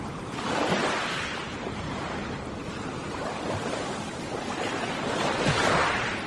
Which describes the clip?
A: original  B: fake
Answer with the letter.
B